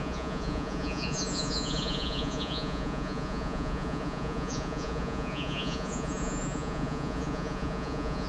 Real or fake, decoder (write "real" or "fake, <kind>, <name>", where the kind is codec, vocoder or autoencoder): fake, vocoder, Vocos